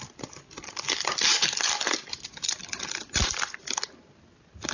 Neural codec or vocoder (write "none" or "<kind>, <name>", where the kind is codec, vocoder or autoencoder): none